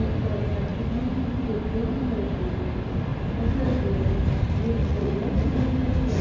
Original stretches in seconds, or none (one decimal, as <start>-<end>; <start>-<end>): 0.0-4.8; 5.5-6.2